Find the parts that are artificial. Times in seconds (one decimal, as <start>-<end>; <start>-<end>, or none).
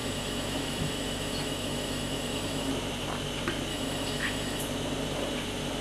0.0-2.7; 3.7-4.6